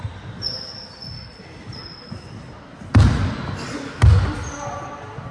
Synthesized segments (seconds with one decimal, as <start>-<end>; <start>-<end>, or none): none